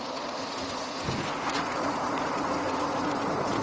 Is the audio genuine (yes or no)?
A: no